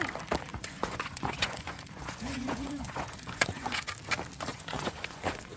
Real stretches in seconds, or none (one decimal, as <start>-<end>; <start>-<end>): 0.0-0.5; 3.9-4.5